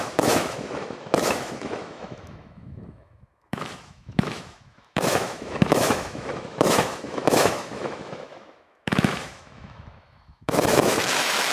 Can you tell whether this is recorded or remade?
remade